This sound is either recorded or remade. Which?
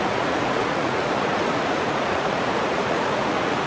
remade